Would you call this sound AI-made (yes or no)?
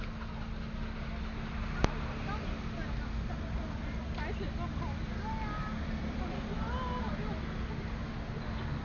no